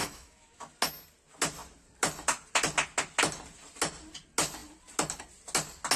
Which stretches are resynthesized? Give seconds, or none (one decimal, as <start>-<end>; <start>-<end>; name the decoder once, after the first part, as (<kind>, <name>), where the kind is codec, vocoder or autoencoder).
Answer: 0.0-0.7 (autoencoder, DAC-VAE)